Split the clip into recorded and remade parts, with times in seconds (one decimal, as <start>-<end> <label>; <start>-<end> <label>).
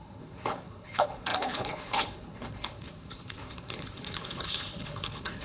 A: 0.0-5.4 remade